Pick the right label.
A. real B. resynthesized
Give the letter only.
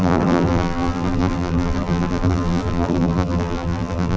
B